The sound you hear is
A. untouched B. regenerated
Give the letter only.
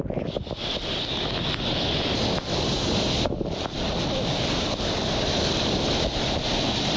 A